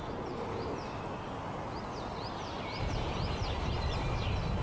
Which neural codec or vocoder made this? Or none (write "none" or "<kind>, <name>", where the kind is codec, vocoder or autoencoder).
none